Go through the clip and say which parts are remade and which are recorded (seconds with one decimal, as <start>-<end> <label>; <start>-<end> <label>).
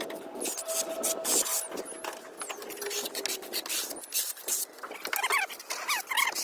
0.0-6.4 recorded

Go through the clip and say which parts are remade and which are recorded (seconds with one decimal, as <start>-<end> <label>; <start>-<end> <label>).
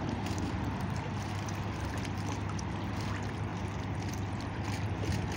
0.0-5.4 recorded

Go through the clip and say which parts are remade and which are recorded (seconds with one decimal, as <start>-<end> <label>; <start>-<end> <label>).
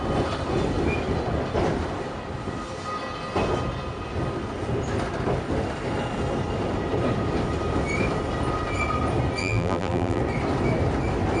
0.0-9.4 recorded; 9.4-10.2 remade; 10.2-11.4 recorded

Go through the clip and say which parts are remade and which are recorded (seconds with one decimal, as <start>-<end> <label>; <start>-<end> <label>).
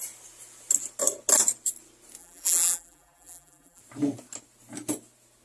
0.0-2.2 recorded; 2.2-3.8 remade; 3.8-5.4 recorded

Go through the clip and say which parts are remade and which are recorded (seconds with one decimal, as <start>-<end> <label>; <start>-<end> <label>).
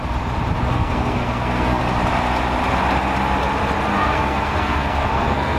0.0-0.7 recorded; 0.7-1.8 remade; 1.8-3.9 recorded; 3.9-5.6 remade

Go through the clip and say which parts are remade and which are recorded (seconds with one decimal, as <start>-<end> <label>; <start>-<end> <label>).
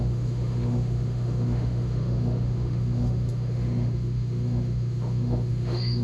0.0-6.0 remade